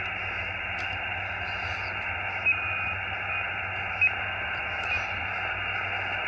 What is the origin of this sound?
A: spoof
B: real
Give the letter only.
B